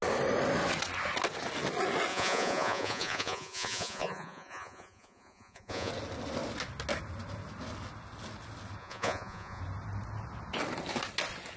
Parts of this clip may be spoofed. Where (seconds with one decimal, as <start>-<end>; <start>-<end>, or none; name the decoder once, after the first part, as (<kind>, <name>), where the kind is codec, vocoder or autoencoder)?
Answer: 2.1-5.9 (vocoder, Vocos); 8.8-9.6